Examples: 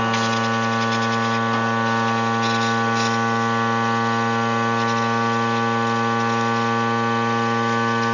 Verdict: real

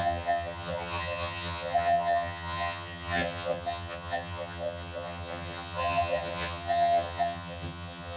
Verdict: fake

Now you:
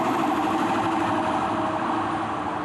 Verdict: real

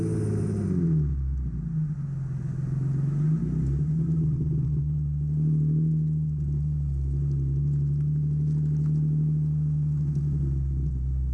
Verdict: real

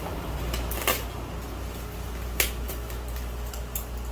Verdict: real